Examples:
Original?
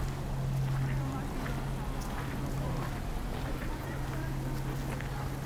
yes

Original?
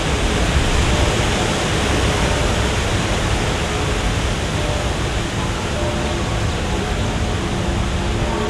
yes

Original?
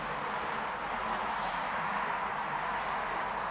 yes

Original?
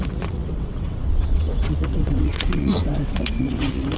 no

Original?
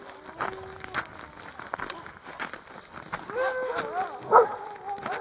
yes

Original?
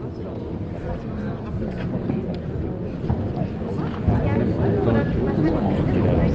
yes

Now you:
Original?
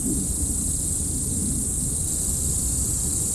yes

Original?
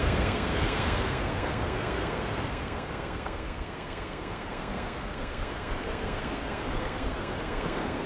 no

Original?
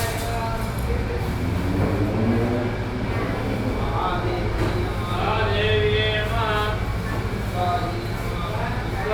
yes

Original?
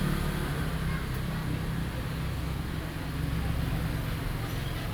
yes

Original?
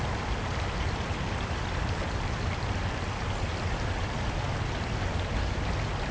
yes